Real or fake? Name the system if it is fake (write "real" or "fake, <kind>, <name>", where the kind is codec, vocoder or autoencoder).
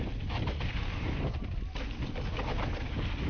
real